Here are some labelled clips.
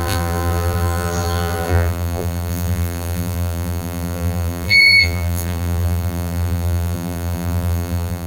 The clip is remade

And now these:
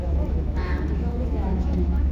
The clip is remade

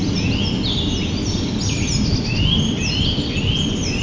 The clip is recorded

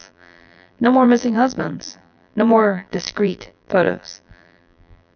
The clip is remade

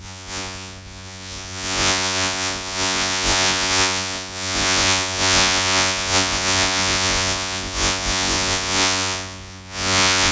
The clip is remade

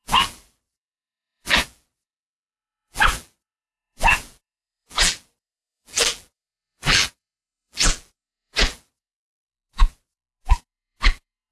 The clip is remade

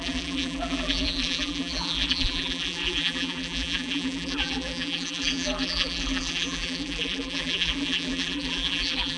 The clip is remade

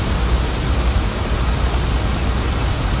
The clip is recorded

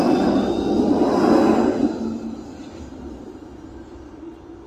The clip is recorded